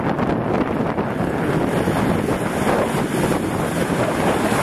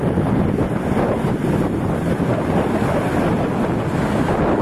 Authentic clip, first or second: first